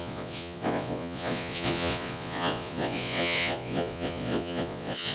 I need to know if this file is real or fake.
fake